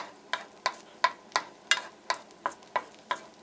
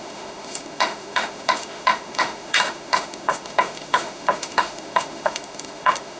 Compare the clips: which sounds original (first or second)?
first